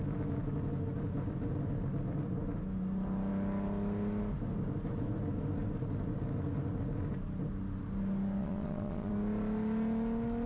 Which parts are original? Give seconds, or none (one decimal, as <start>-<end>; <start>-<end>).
0.0-8.4; 9.1-10.5